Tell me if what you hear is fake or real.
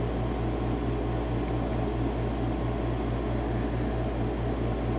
real